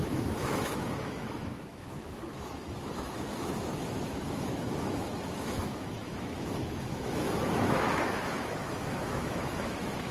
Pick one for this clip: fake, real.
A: fake